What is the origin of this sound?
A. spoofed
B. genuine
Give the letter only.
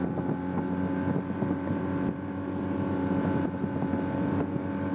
B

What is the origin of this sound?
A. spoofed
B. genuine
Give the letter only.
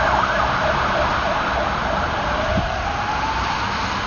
B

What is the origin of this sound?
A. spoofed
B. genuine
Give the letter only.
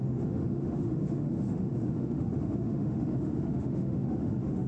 A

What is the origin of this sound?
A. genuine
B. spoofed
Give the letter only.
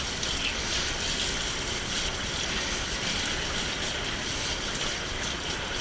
A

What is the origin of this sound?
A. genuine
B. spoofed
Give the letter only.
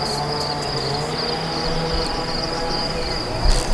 A